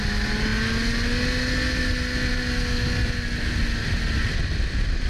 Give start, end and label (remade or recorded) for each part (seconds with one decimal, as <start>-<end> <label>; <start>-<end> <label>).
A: 0.0-5.1 recorded